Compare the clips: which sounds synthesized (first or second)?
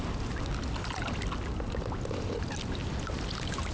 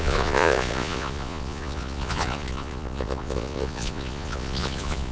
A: second